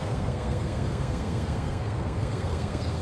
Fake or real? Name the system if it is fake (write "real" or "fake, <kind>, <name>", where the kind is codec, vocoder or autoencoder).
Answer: fake, codec, SNAC